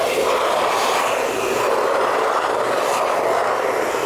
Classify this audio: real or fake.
real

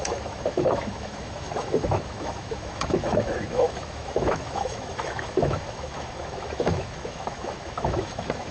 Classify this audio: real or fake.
fake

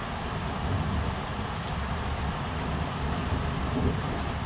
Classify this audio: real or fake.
real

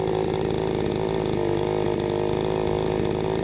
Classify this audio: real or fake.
real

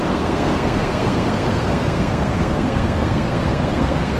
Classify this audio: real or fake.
fake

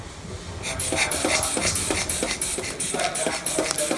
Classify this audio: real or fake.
real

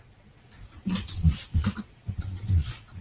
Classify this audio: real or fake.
fake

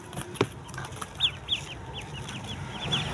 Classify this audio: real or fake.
real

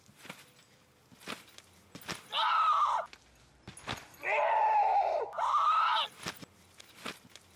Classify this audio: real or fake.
real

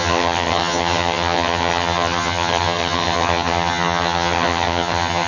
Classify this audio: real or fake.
fake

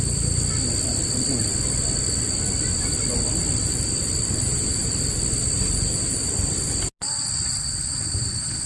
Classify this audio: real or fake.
real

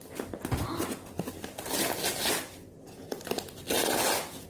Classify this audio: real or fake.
real